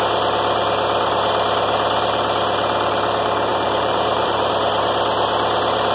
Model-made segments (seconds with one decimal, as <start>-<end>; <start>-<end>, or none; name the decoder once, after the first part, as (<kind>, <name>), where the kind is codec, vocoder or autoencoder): 3.5-4.5 (vocoder, BigVGAN v2)